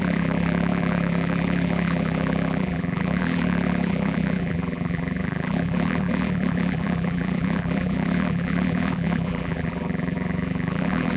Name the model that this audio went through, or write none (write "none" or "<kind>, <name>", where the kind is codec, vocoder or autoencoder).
vocoder, BigVGAN v2